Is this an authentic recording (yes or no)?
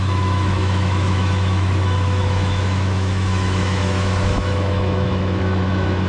no